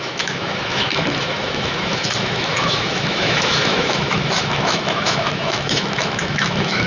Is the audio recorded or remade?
remade